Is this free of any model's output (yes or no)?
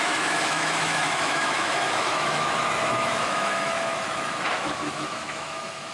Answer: no